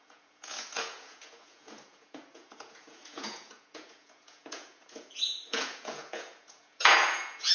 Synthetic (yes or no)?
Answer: yes